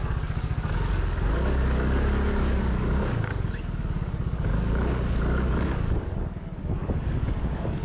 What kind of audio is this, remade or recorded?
remade